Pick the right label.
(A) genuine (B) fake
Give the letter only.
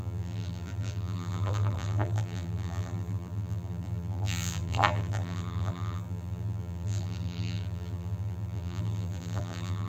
B